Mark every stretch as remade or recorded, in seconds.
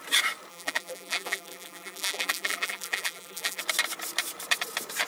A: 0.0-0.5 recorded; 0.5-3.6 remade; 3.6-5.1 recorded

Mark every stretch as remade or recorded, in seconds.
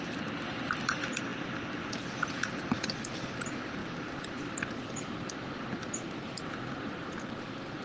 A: 0.0-7.8 remade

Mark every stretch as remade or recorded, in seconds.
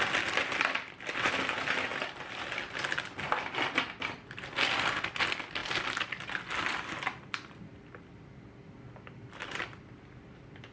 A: 0.0-10.7 recorded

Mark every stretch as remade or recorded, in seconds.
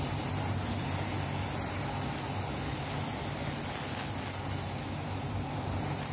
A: 0.0-1.1 remade; 1.1-4.8 recorded; 4.8-6.1 remade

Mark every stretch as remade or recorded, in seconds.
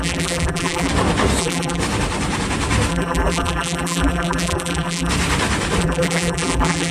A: 0.0-0.9 remade; 0.9-1.4 recorded; 1.4-1.8 remade; 1.8-2.9 recorded; 2.9-5.1 remade; 5.1-5.8 recorded; 5.8-6.9 remade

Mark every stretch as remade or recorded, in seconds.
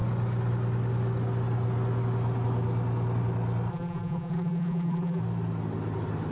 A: 0.0-3.7 recorded; 3.7-5.2 remade; 5.2-6.3 recorded